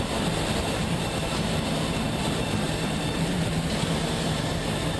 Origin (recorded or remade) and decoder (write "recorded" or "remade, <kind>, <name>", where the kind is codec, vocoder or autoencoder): remade, vocoder, BigVGAN v2